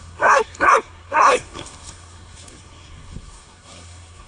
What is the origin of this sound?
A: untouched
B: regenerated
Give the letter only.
B